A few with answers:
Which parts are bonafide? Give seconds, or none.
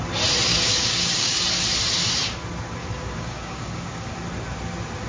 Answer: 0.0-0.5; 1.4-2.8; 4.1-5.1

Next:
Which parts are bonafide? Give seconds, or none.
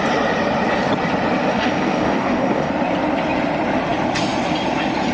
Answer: 0.0-1.5; 2.7-5.1